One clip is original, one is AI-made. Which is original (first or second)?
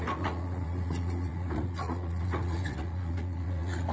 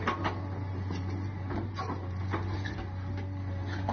second